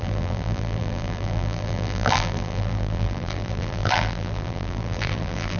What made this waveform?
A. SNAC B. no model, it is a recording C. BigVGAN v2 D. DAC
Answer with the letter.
C